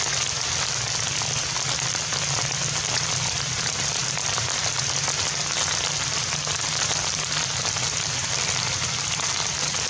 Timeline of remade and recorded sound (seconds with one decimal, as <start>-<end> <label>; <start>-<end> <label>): 0.0-4.0 recorded; 4.0-5.2 remade; 5.2-9.9 recorded